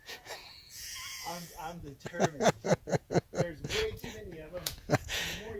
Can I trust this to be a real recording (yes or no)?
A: no